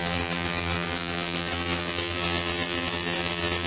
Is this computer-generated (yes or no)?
yes